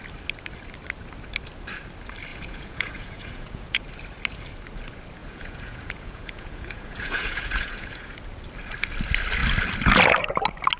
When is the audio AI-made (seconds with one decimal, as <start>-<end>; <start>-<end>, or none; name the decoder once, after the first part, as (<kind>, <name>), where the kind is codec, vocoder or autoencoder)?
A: 2.3-3.8 (vocoder, Vocos); 5.2-8.2